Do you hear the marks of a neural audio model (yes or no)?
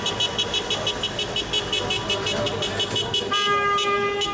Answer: no